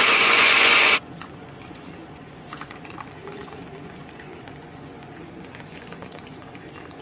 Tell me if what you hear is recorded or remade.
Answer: remade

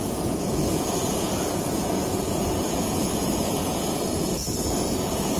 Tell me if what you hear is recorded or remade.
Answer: remade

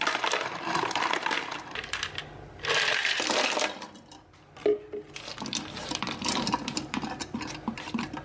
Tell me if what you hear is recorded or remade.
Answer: remade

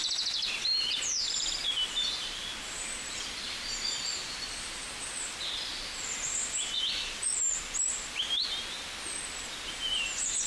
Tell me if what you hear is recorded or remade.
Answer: recorded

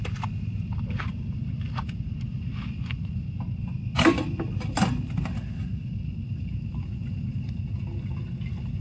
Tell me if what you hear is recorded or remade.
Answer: recorded